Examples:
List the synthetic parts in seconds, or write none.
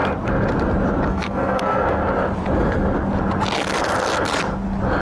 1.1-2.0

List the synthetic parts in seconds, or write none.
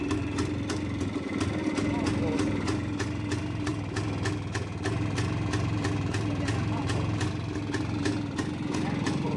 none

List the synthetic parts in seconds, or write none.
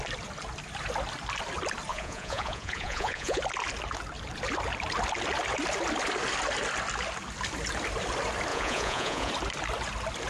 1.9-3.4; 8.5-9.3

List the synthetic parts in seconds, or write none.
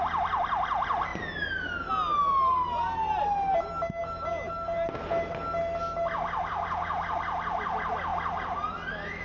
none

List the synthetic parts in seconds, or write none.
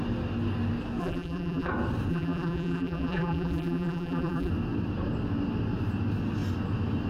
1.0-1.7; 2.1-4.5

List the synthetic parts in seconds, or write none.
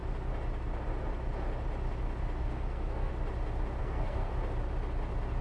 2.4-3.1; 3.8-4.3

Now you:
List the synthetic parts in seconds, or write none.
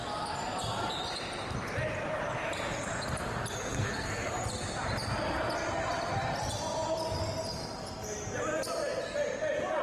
3.7-4.3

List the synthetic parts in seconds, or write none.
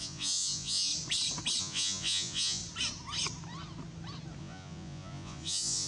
0.0-0.9; 1.6-2.6; 4.4-5.9